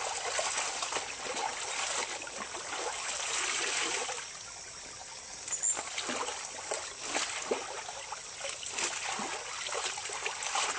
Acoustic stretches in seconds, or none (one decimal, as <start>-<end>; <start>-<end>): 0.0-10.8